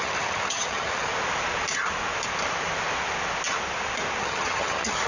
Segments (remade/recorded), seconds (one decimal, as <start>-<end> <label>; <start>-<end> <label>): 0.0-1.1 remade; 1.1-4.2 recorded; 4.2-5.1 remade